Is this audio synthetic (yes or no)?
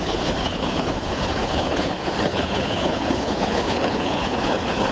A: yes